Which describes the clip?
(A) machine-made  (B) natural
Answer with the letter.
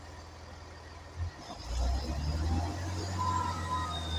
B